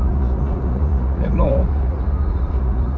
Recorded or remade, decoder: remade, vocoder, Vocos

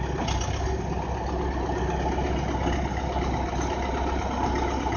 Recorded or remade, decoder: recorded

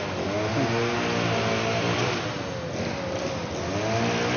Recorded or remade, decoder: recorded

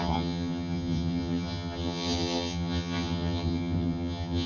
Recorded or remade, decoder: remade, vocoder, HiFi-GAN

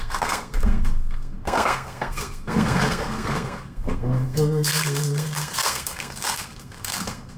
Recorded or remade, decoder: remade, codec, SNAC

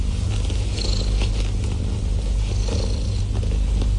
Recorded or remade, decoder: recorded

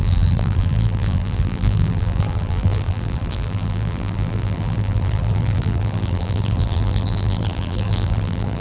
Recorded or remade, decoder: remade, vocoder, BigVGAN v2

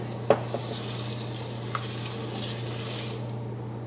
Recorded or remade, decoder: recorded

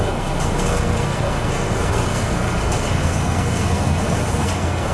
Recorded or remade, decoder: remade, codec, SNAC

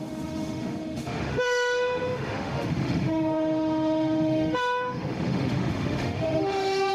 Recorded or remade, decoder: remade, autoencoder, DAC-VAE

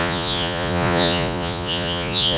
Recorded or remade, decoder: remade, vocoder, Vocos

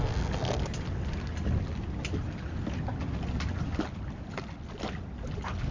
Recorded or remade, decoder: recorded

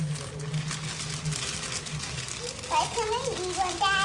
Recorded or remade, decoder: recorded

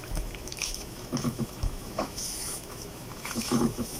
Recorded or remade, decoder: remade, autoencoder, DAC-VAE